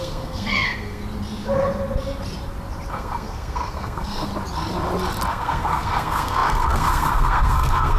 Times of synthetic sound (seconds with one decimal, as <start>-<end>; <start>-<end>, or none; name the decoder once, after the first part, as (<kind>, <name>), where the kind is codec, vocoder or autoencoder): 0.0-1.0 (codec, SNAC); 2.9-4.3; 5.3-8.0